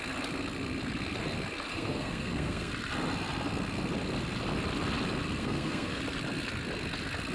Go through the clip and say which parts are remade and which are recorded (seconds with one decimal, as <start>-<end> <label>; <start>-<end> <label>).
0.0-1.7 recorded; 1.7-2.7 remade; 2.7-5.4 recorded; 5.4-6.0 remade; 6.0-7.3 recorded